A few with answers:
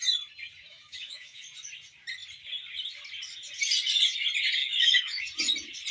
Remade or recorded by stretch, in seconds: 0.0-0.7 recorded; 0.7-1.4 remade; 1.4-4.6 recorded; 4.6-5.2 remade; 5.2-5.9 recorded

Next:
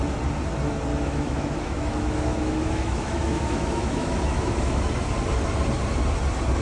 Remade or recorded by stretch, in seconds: 0.0-0.9 recorded; 0.9-4.9 remade; 4.9-6.6 recorded

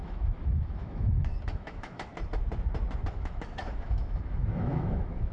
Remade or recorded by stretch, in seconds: 0.0-2.1 remade; 2.1-3.1 recorded; 3.1-5.3 remade